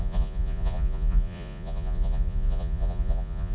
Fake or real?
fake